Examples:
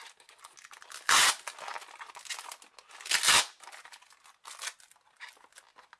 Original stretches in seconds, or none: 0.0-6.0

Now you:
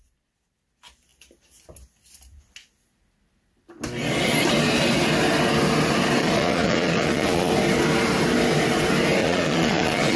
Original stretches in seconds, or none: 0.0-6.2; 7.5-9.2

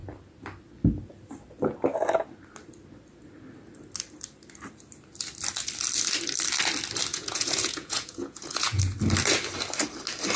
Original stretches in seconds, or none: 0.0-7.1; 8.8-10.4

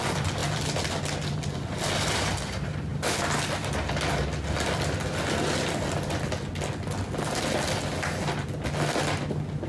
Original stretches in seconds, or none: 0.0-9.7

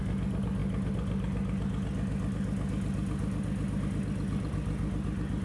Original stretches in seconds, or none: 0.0-5.4

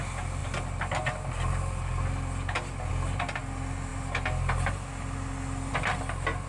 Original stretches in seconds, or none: 0.0-6.5

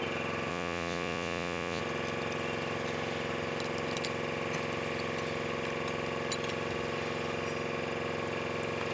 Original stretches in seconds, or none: 0.0-0.5; 1.8-8.9